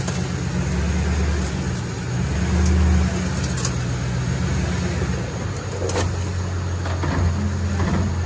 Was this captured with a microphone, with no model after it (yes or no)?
yes